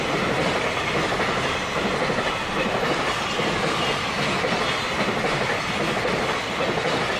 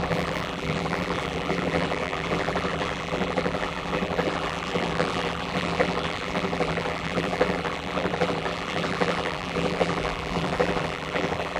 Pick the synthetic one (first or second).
second